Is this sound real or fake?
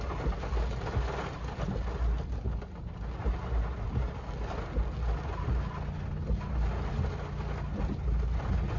real